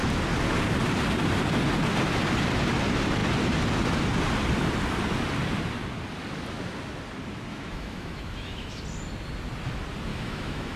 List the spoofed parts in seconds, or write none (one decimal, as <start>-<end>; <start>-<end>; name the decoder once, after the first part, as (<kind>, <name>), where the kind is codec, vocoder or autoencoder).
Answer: 7.5-8.8 (autoencoder, DAC-VAE); 10.1-10.8